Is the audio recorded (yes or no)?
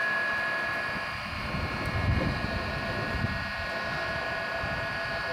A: yes